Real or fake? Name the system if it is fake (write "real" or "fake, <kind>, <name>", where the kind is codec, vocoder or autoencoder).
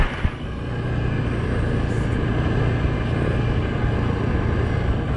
real